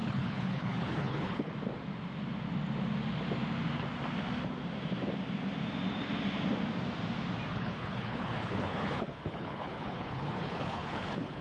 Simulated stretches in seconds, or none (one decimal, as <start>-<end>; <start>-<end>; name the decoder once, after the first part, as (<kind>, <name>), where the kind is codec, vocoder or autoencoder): 0.0-1.5 (codec, HILCodec); 7.5-11.4